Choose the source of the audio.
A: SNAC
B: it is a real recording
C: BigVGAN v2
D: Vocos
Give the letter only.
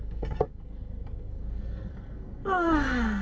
A